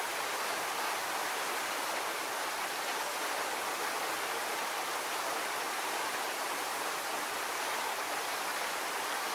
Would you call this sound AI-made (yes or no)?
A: no